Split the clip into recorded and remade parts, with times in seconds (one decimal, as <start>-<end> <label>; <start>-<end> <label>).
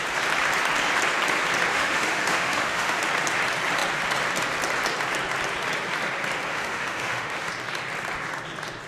0.0-1.7 recorded; 1.7-3.0 remade; 3.0-6.5 recorded; 6.5-7.5 remade; 7.5-8.9 recorded